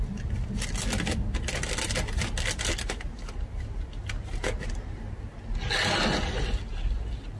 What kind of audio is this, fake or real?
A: real